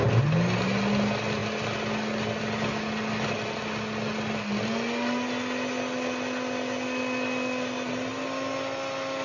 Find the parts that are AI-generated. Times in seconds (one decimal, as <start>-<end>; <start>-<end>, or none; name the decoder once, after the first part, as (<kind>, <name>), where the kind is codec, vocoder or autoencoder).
none